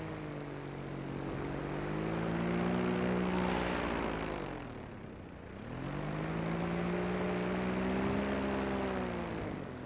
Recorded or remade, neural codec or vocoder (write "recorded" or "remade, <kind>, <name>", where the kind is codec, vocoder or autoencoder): recorded